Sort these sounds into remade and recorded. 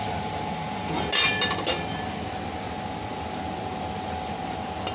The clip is recorded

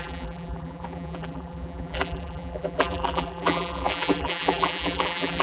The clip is remade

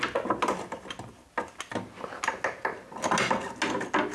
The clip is recorded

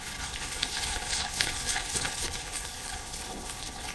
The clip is remade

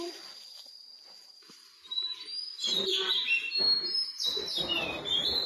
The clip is remade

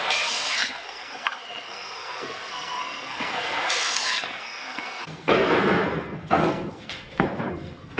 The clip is remade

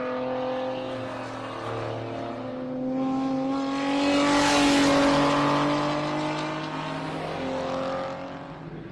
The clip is recorded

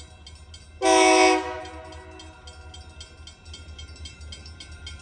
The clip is recorded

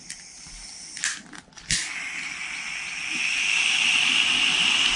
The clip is remade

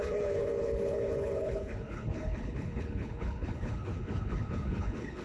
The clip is remade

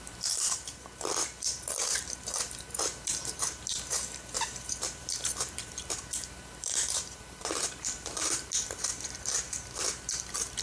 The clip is remade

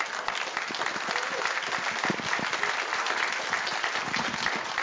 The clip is recorded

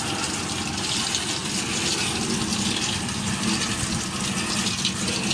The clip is recorded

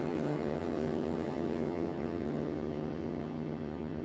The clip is remade